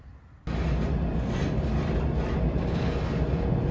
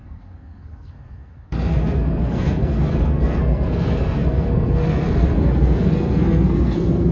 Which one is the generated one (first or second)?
second